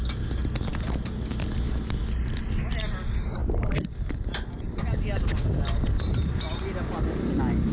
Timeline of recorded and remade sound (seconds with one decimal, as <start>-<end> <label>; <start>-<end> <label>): 0.0-7.7 recorded